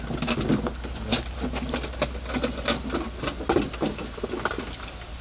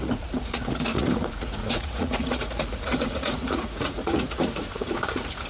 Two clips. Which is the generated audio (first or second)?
second